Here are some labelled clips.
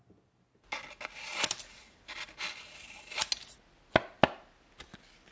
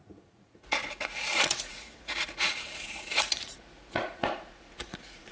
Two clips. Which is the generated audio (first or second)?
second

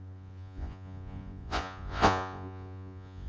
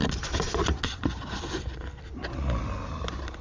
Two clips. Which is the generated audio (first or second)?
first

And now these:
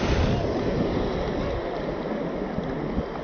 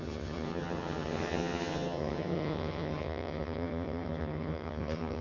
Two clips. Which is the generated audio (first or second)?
second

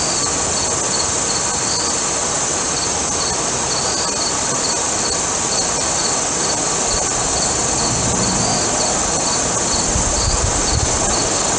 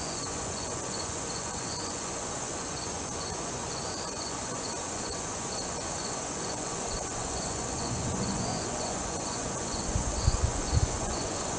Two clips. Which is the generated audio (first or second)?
second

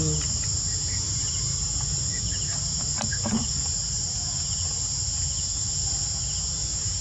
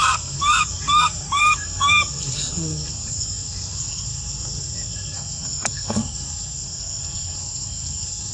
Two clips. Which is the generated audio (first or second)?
second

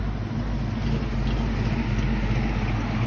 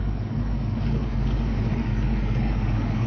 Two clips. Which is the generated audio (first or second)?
second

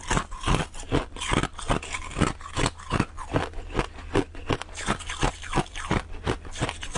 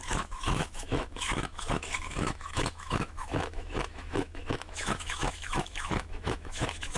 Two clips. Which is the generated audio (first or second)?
second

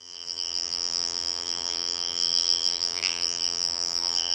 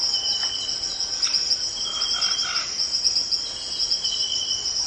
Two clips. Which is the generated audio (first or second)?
first